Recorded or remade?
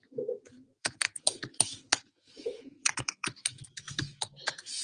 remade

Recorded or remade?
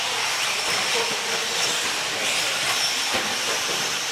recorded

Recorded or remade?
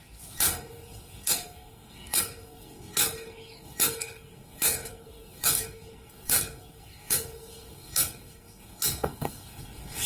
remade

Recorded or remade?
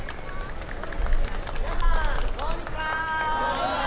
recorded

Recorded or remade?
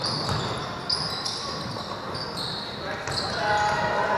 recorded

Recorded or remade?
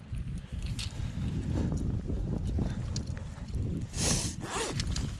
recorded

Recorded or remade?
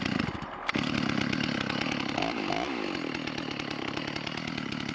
recorded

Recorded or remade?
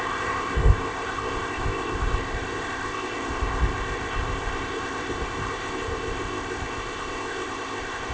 remade